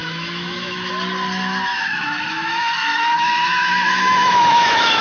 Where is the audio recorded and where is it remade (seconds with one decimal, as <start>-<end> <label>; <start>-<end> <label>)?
0.0-0.9 remade; 0.9-1.7 recorded; 1.7-5.0 remade